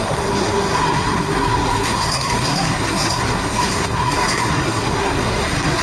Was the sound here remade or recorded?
remade